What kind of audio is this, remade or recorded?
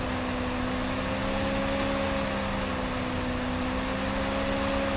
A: recorded